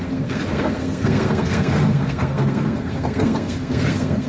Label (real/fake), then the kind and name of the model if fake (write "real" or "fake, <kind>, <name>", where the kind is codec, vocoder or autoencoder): fake, codec, SNAC